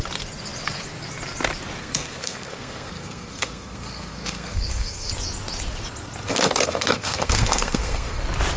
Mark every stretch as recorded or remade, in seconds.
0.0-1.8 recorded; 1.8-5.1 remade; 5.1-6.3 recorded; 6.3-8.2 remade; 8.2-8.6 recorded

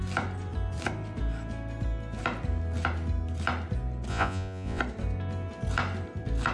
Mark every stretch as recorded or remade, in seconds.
0.0-4.1 recorded; 4.1-4.8 remade; 4.8-6.5 recorded

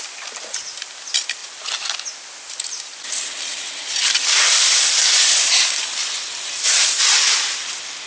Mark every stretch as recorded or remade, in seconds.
0.0-3.5 recorded; 3.5-7.0 remade; 7.0-8.1 recorded

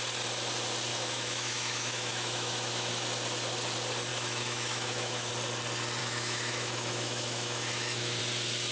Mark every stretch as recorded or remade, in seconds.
0.0-0.9 recorded; 0.9-2.9 remade; 2.9-4.1 recorded; 4.1-5.3 remade; 5.3-6.0 recorded; 6.0-8.2 remade; 8.2-8.7 recorded